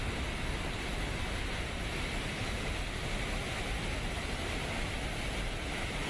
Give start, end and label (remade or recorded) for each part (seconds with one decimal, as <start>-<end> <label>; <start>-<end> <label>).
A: 0.0-6.1 recorded